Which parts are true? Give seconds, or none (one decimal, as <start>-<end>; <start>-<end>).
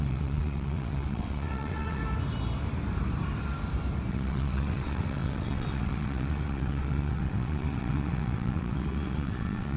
2.0-4.1